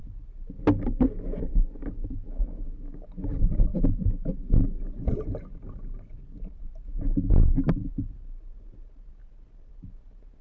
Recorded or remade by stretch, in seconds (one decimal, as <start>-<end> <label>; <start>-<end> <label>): 0.0-10.4 recorded